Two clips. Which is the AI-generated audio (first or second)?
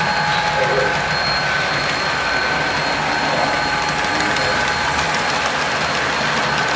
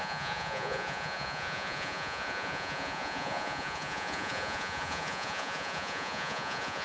second